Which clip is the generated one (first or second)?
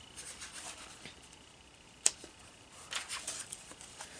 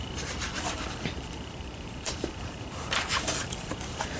second